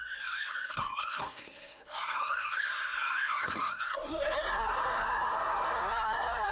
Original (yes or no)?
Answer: no